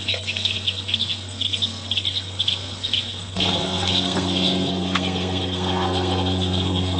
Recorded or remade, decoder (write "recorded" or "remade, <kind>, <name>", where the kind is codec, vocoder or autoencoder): remade, codec, SNAC